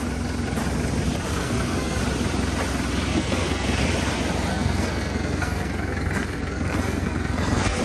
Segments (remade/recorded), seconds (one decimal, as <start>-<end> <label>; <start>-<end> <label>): 0.0-1.3 recorded; 1.3-2.0 remade; 2.0-3.1 recorded; 3.1-3.8 remade; 3.8-4.5 recorded; 4.5-7.8 remade